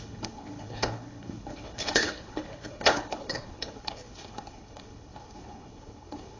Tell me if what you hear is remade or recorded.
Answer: remade